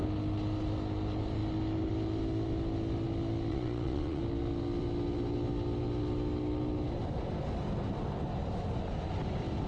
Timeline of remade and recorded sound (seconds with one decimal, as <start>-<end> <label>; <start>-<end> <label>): 0.0-3.5 recorded; 3.5-4.2 remade; 4.2-9.7 recorded